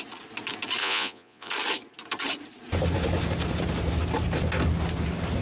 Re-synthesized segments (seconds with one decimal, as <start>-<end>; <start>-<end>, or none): 0.8-1.5